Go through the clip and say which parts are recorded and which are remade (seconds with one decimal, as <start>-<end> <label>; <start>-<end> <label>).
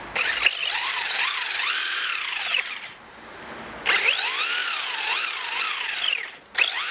0.0-0.6 recorded; 0.6-3.3 remade; 3.3-4.6 recorded; 4.6-5.6 remade; 5.6-6.9 recorded